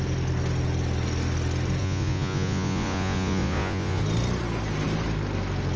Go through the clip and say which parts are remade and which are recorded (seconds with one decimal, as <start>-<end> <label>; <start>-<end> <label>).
0.0-1.8 recorded; 1.8-4.0 remade; 4.0-5.8 recorded